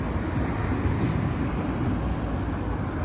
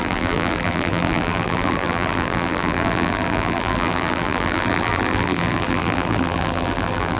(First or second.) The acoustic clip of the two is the first